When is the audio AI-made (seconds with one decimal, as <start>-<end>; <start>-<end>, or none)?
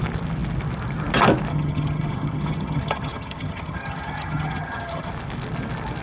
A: 1.5-5.1